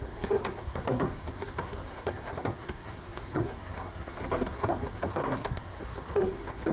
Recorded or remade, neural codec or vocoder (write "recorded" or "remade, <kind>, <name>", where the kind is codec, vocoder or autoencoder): remade, codec, SNAC